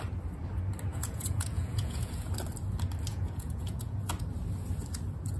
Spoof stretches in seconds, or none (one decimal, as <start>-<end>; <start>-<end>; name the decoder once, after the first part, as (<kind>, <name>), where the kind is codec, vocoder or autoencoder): 0.9-2.3 (vocoder, Vocos); 3.1-4.1